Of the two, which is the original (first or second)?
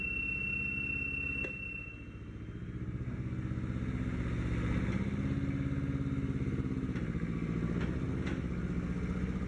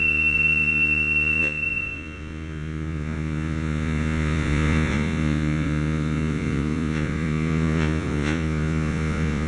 first